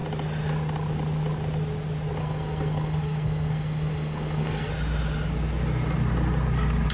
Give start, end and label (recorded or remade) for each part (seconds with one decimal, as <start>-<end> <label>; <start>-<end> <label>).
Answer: 0.0-2.2 recorded; 2.2-4.7 remade; 4.7-6.9 recorded